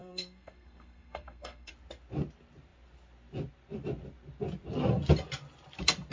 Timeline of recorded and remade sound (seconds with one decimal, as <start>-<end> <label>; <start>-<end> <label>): 0.0-1.7 remade; 1.7-6.1 recorded